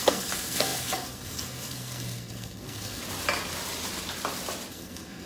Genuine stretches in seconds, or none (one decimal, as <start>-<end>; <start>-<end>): 3.0-4.7

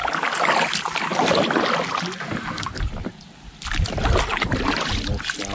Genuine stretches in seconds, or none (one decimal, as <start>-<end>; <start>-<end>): 0.0-5.5

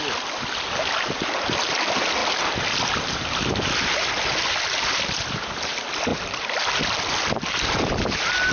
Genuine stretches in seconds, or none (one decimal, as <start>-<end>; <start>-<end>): 0.0-8.5

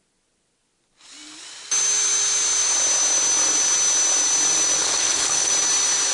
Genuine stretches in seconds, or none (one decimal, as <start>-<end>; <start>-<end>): 0.0-4.8; 5.5-6.1

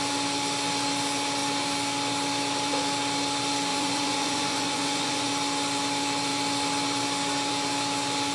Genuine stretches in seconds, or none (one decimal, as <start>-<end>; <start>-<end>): 0.0-3.7; 5.3-8.3

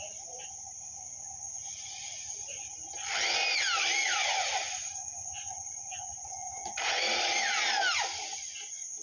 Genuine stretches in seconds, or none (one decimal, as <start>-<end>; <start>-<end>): 0.0-1.7; 2.6-4.6; 7.2-9.0

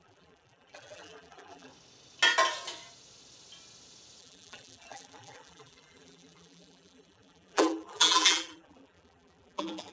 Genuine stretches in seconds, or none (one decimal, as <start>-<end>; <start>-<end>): 1.7-4.2